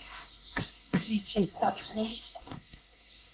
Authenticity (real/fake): fake